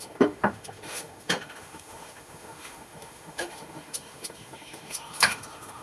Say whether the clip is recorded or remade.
remade